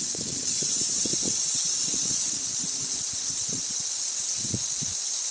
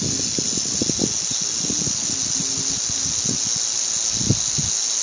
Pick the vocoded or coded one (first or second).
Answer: first